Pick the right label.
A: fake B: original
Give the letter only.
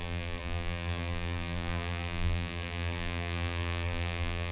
A